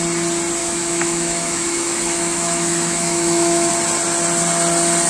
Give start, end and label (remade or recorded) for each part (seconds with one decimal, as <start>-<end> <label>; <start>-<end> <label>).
0.0-0.6 recorded; 0.6-3.7 remade; 3.7-5.1 recorded